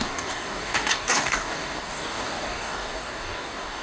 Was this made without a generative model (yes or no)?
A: no